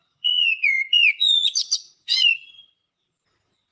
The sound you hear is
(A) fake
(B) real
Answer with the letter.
A